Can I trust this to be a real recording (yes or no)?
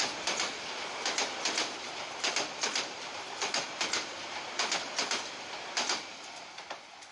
yes